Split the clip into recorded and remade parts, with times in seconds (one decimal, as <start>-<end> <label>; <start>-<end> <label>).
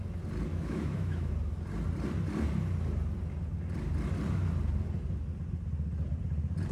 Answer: 0.0-0.5 recorded; 0.5-1.3 remade; 1.3-6.7 recorded